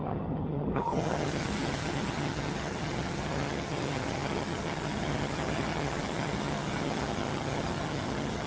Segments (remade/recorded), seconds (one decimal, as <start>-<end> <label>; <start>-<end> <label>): 0.0-8.5 remade